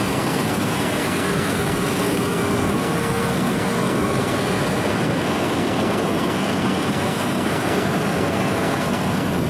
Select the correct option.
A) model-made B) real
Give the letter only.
A